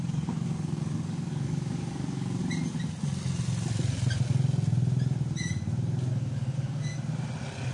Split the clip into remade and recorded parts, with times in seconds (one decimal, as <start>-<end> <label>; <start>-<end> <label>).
0.0-2.4 remade; 2.4-6.1 recorded; 6.1-6.9 remade; 6.9-7.7 recorded